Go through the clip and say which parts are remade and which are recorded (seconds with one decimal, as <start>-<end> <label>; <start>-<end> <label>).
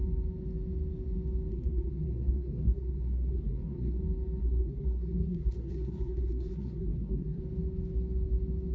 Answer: 0.0-1.5 recorded; 1.5-4.0 remade; 4.0-4.4 recorded; 4.4-7.4 remade; 7.4-8.7 recorded